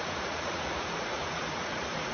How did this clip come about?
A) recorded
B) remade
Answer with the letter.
B